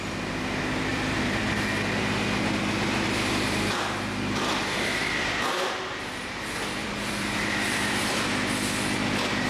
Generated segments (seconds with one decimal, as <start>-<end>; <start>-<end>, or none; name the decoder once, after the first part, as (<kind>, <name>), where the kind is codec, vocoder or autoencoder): 0.9-1.4 (vocoder, BigVGAN v2); 6.8-8.2